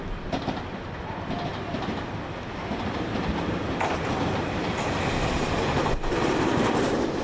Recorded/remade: recorded